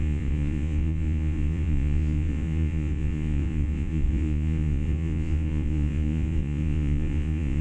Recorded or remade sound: remade